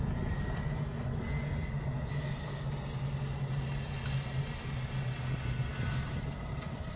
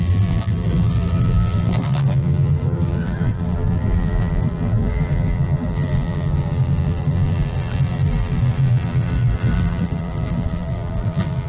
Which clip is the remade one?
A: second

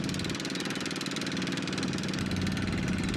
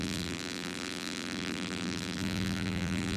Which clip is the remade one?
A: second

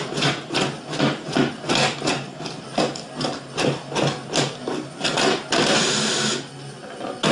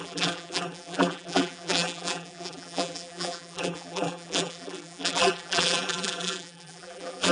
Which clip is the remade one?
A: second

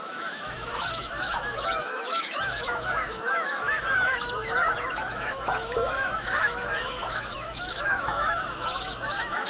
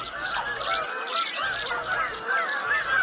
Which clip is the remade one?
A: first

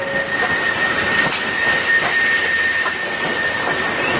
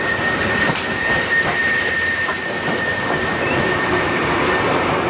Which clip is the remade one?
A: second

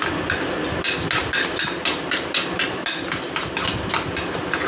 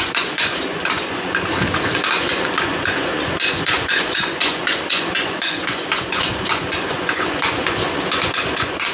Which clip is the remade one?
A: second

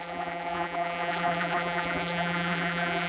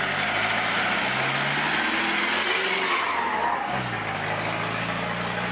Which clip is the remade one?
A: first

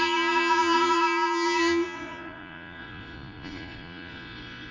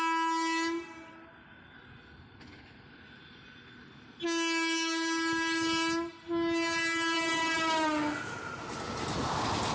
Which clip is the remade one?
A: first